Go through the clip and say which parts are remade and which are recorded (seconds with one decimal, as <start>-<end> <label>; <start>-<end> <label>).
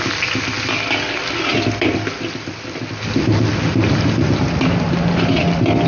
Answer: 0.0-5.9 recorded